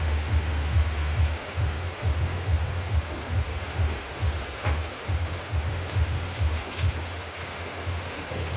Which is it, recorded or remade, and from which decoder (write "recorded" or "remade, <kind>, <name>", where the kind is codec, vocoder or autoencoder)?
remade, autoencoder, DAC-VAE